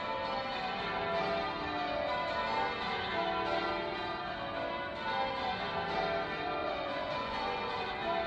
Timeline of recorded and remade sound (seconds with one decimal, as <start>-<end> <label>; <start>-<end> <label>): 0.0-6.6 recorded; 6.6-7.9 remade; 7.9-8.3 recorded